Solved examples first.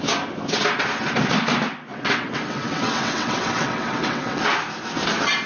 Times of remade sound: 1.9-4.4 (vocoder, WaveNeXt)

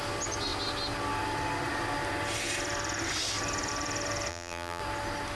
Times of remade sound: 4.3-4.8 (vocoder, BigVGAN v2)

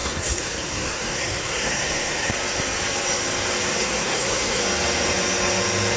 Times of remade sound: 0.0-2.3 (codec, SNAC); 3.8-4.6

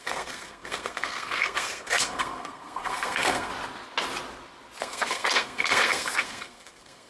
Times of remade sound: 0.0-3.5 (codec, SNAC); 4.8-7.1

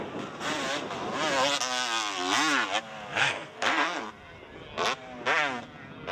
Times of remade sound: 3.2-4.1 (codec, SNAC)